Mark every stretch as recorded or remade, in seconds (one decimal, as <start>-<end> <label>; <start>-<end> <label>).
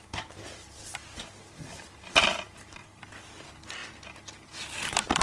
0.0-5.2 recorded